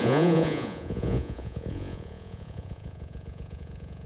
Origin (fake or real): fake